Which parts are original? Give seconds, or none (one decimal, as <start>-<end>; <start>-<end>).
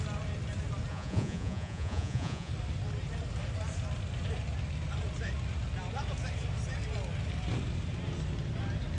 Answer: 0.0-0.9; 2.5-9.0